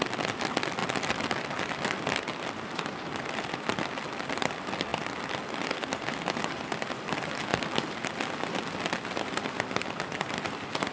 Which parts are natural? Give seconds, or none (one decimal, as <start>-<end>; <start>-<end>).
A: 0.0-10.9